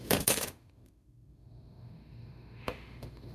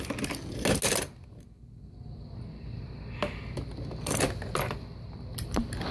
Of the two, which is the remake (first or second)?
first